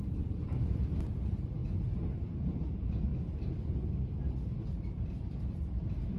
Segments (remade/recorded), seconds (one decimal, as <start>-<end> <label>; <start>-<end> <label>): 0.0-1.6 remade; 1.6-2.4 recorded; 2.4-3.1 remade; 3.1-4.9 recorded; 4.9-6.2 remade